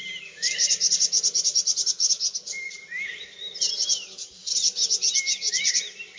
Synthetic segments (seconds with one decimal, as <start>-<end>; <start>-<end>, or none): 0.0-4.8; 5.5-6.2